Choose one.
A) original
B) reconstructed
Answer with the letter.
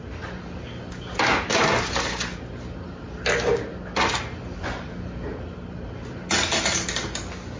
A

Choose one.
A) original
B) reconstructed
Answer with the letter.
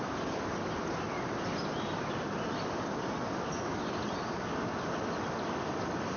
A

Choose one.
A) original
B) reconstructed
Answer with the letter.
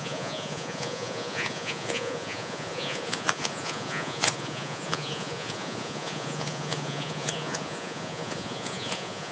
B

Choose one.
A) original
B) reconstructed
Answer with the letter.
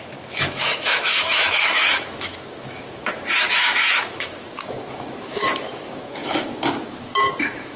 B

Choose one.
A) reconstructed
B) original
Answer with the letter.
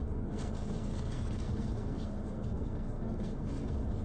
A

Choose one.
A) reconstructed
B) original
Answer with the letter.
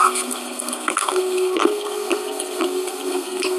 A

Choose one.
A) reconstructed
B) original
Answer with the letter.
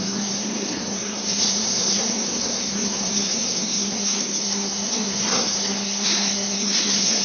A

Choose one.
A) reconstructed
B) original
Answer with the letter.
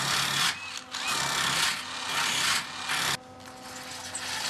B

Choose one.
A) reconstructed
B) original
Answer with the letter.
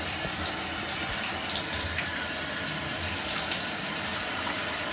A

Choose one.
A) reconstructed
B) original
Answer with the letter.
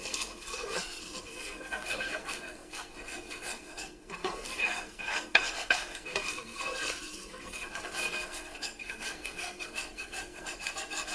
A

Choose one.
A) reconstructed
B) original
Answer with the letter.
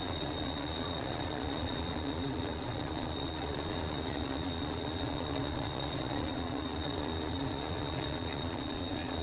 A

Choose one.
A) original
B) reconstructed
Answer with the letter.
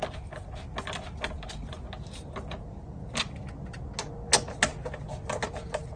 A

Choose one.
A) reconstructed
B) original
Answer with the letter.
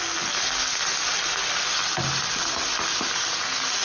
B